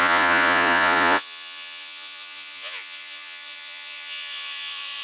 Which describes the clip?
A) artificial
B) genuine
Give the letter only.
A